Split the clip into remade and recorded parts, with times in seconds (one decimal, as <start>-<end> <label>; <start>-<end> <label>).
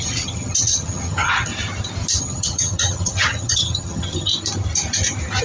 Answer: 0.0-1.5 remade; 1.5-2.2 recorded; 2.2-4.3 remade; 4.3-5.4 recorded